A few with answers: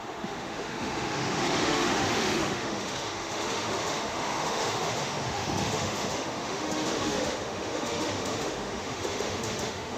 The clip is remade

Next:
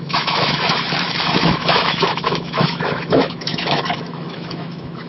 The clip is remade